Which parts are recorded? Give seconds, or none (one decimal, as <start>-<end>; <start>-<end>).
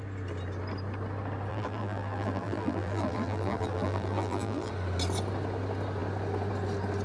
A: 0.0-1.5; 4.7-7.0